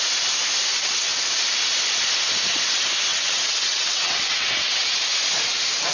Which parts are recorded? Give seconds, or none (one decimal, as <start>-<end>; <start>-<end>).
0.0-0.7; 1.3-3.1; 5.0-5.9